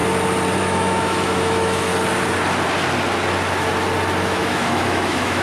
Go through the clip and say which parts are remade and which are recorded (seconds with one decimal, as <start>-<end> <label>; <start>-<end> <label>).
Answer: 0.0-0.6 recorded; 0.6-1.9 remade; 1.9-4.2 recorded; 4.2-5.4 remade

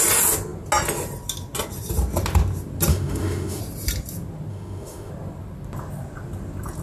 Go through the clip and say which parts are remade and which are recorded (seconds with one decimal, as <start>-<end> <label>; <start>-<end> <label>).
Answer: 0.0-2.9 recorded; 2.9-3.6 remade; 3.6-4.5 recorded; 4.5-5.1 remade; 5.1-6.8 recorded

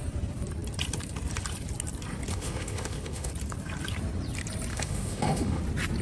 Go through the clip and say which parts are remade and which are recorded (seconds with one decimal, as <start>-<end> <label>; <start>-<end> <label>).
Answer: 0.0-2.3 recorded; 2.3-3.3 remade; 3.3-4.7 recorded; 4.7-5.6 remade; 5.6-6.0 recorded

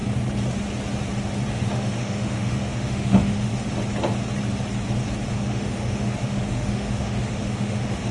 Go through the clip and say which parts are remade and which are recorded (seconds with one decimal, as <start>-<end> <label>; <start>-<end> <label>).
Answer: 0.0-1.5 recorded; 1.5-3.5 remade; 3.5-5.3 recorded; 5.3-8.1 remade

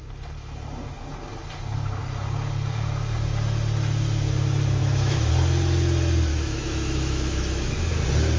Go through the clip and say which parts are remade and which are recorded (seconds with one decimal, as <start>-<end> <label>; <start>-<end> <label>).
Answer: 0.0-4.8 recorded; 4.8-5.3 remade; 5.3-6.3 recorded; 6.3-7.9 remade; 7.9-8.4 recorded

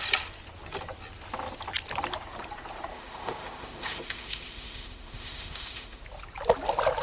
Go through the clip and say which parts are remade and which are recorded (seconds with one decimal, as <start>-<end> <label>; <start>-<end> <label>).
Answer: 0.0-2.9 recorded; 2.9-6.0 remade; 6.0-7.0 recorded

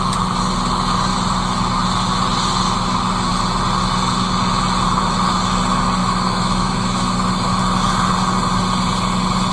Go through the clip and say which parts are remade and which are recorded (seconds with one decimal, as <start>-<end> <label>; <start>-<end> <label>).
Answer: 0.0-6.0 recorded; 6.0-7.6 remade; 7.6-9.5 recorded